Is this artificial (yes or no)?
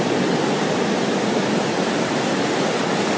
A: no